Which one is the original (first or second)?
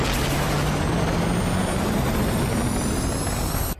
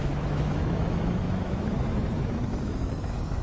first